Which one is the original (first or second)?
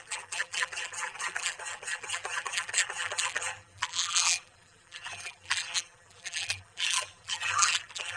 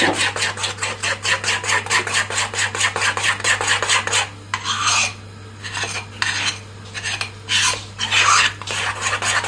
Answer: second